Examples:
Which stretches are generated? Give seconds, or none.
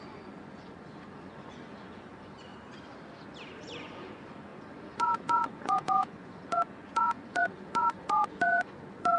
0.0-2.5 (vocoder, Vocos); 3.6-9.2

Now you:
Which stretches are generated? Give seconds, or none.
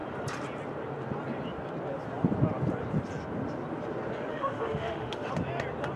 4.3-5.3 (autoencoder, DAC-VAE)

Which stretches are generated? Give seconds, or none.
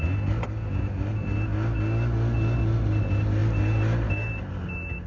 none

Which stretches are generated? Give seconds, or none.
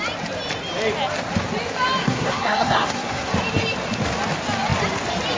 2.0-3.3 (codec, SNAC)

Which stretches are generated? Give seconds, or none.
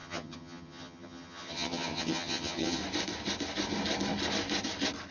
0.0-2.8 (vocoder, HiFi-GAN)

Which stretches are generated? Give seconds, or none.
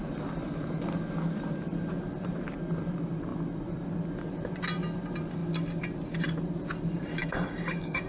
7.2-8.1 (codec, DAC)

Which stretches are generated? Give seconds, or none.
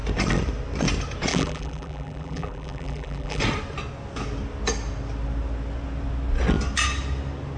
1.3-3.4 (vocoder, BigVGAN v2)